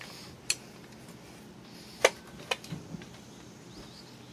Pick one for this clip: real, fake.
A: real